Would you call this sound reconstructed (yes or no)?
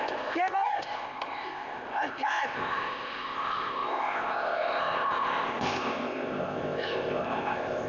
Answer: yes